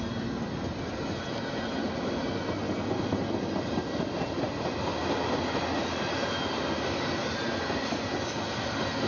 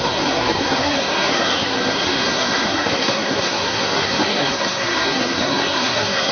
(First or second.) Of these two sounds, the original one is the first